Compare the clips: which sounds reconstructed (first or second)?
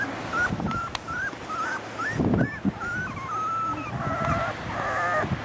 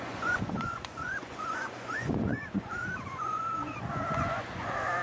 second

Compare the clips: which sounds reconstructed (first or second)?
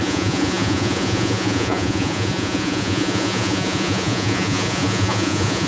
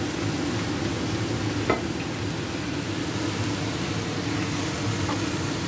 first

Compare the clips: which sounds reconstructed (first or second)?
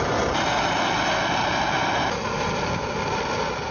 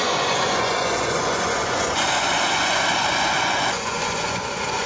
second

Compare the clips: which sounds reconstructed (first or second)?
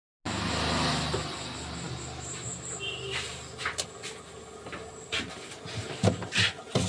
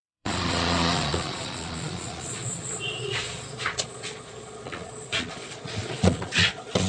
second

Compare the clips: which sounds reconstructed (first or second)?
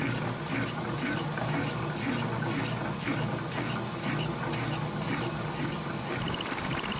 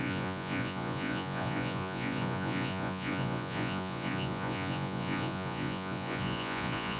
second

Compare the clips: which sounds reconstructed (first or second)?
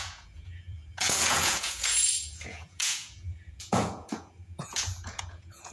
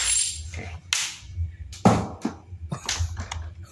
first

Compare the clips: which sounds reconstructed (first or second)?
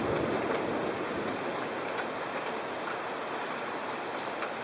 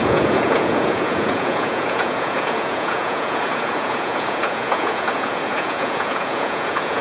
second